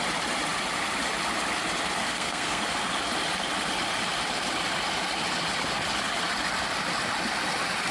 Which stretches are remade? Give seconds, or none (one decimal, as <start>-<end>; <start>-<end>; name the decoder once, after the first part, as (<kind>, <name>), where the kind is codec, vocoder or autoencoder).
2.0-2.6 (codec, SNAC)